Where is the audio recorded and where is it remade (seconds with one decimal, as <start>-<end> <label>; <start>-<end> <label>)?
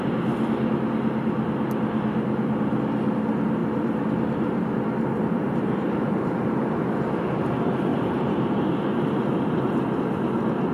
0.0-3.6 recorded; 3.6-6.8 remade; 6.8-7.9 recorded; 7.9-9.4 remade; 9.4-10.7 recorded